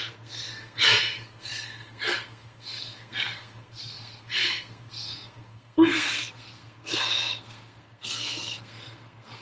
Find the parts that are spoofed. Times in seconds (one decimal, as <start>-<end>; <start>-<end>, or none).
0.0-9.4